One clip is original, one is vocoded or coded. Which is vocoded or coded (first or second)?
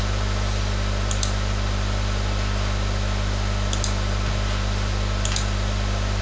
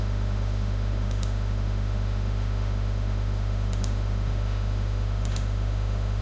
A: second